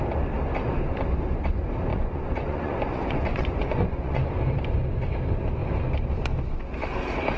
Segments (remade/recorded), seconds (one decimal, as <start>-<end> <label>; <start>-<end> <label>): 0.0-1.9 recorded; 1.9-4.4 remade; 4.4-7.4 recorded